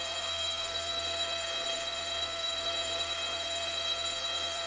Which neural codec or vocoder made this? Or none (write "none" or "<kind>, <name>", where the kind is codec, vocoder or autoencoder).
codec, SNAC